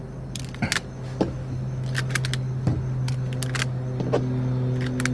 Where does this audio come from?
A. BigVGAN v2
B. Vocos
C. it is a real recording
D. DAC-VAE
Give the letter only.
C